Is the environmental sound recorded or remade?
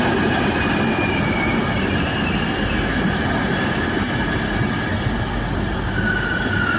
recorded